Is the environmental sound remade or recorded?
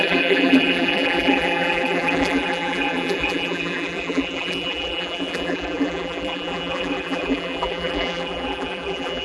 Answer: remade